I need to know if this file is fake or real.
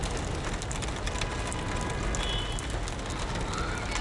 real